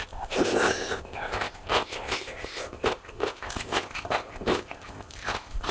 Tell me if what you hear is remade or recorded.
remade